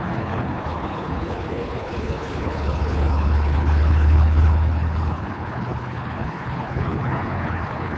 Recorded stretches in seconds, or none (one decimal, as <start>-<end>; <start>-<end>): none